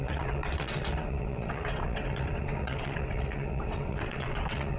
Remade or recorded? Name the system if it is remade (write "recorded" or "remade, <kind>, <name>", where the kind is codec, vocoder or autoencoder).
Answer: remade, vocoder, WaveNeXt